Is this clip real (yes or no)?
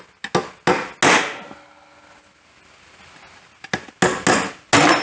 yes